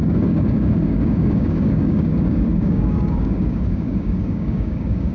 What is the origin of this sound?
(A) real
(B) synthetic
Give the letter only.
B